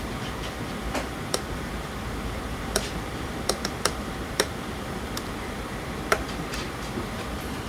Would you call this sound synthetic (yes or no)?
yes